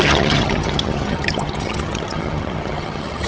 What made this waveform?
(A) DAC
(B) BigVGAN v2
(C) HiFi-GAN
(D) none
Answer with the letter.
C